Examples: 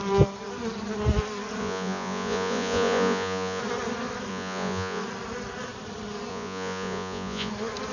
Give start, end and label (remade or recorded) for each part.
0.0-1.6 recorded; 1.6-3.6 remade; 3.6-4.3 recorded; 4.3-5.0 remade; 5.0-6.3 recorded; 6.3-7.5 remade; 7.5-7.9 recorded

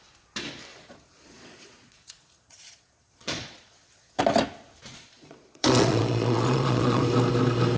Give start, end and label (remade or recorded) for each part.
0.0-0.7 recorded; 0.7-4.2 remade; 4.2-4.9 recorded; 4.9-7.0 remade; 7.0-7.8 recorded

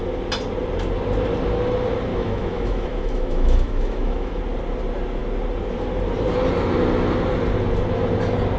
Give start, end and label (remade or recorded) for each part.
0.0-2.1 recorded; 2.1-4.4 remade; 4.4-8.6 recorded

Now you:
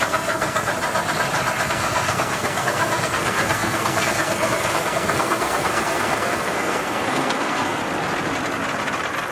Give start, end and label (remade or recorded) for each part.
0.0-0.7 remade; 0.7-1.7 recorded; 1.7-7.8 remade; 7.8-9.3 recorded

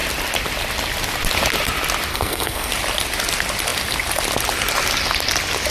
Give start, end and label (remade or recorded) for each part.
0.0-2.1 recorded; 2.1-2.7 remade; 2.7-5.7 recorded

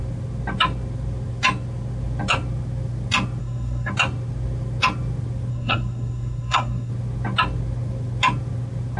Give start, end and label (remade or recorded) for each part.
0.0-3.4 recorded; 3.4-3.9 remade; 3.9-5.5 recorded; 5.5-6.9 remade; 6.9-9.0 recorded

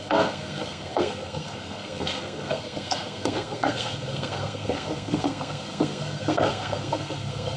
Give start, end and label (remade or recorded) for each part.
0.0-7.6 remade

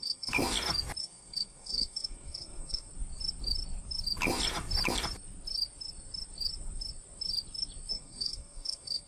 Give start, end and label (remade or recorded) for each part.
0.0-0.4 remade; 0.4-1.0 recorded; 1.0-2.9 remade; 2.9-7.9 recorded; 7.9-9.1 remade